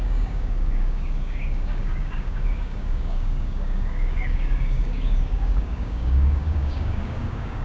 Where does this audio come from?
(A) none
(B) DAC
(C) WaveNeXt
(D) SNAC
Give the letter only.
B